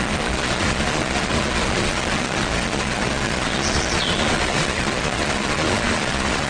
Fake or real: fake